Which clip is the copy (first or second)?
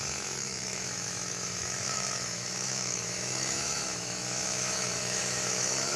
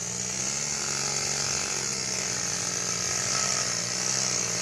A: first